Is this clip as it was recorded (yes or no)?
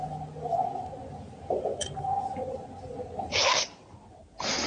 yes